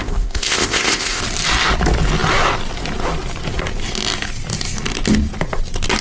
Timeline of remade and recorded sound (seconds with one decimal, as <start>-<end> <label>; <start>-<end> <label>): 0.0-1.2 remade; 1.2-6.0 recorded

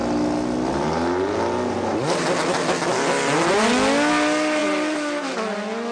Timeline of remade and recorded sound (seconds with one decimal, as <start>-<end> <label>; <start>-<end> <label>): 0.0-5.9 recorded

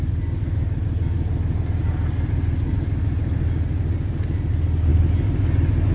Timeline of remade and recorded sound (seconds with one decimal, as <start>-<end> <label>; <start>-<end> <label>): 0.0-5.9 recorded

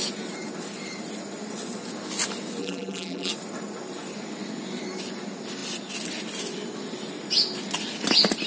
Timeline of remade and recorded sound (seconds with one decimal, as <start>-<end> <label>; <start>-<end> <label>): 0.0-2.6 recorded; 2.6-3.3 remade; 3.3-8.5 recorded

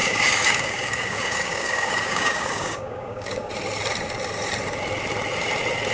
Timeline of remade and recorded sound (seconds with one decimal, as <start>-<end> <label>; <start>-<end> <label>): 0.0-3.5 remade; 3.5-5.9 recorded

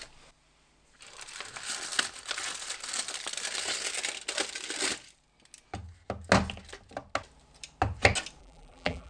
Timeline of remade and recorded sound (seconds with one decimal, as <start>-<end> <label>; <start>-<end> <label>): 0.0-8.4 recorded; 8.4-9.1 remade

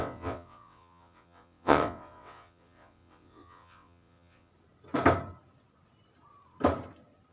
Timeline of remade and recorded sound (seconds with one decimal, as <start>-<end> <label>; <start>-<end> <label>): 0.0-4.5 remade; 4.5-7.3 recorded

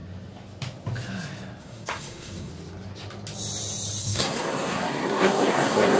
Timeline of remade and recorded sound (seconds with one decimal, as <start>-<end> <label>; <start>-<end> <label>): 0.0-1.6 recorded; 1.6-2.5 remade; 2.5-4.0 recorded; 4.0-6.0 remade